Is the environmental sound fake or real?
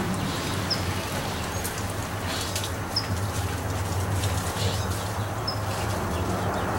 real